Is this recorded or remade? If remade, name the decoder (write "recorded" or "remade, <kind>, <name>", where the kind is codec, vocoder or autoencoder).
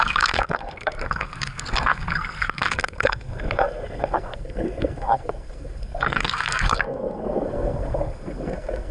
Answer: remade, codec, SNAC